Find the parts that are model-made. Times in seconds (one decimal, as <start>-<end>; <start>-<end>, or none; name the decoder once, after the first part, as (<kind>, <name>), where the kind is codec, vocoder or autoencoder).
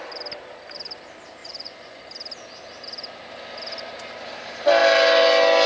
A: 1.4-2.0 (vocoder, Vocos)